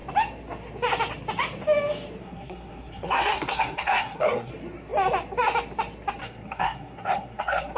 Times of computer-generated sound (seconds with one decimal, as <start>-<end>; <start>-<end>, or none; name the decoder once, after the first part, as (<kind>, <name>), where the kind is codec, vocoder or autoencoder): 2.2-4.5 (codec, SNAC); 6.2-7.8